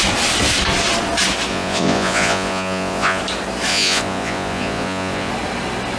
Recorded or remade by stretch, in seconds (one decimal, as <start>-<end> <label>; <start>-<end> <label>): 0.0-1.5 recorded; 1.5-3.2 remade; 3.2-3.7 recorded; 3.7-5.3 remade; 5.3-6.0 recorded